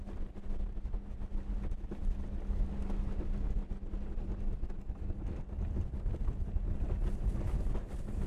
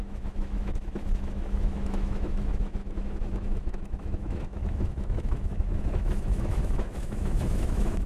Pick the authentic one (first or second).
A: first